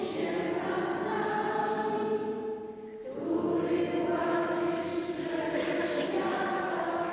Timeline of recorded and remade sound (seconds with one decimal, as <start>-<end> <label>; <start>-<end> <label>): 0.0-4.2 recorded; 4.2-4.9 remade; 4.9-6.3 recorded; 6.3-7.1 remade